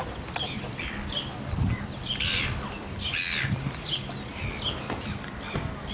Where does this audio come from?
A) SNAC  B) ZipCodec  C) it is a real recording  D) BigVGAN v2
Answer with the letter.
C